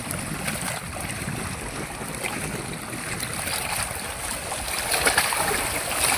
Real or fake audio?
fake